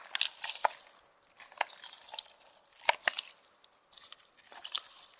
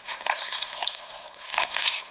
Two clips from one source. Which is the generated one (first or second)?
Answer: second